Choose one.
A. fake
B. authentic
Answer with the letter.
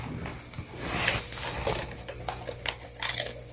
B